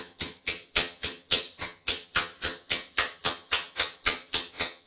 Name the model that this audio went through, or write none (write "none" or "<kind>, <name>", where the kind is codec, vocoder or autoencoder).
vocoder, HiFi-GAN